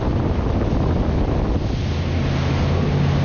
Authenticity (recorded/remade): recorded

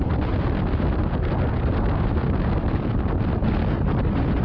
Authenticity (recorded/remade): recorded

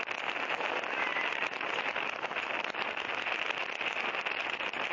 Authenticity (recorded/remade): recorded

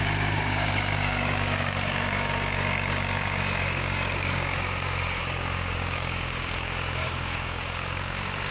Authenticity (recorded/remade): remade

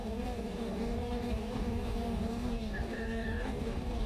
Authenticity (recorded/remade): remade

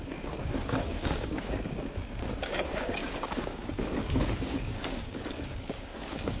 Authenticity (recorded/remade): remade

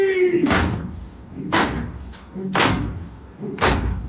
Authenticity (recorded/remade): remade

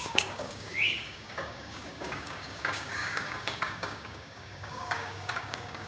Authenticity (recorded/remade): remade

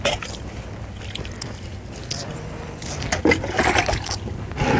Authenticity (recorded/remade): recorded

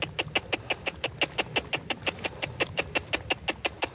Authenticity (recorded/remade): recorded